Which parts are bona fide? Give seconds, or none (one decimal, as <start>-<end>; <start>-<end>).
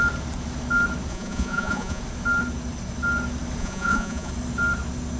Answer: 0.0-1.1; 2.0-3.6; 4.3-5.2